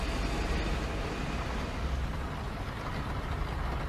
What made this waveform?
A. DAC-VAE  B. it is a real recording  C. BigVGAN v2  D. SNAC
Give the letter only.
B